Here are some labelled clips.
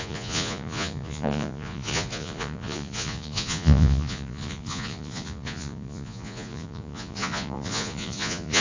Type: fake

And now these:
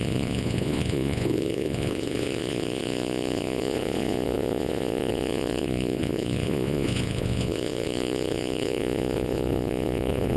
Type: fake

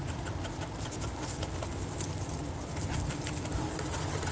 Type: real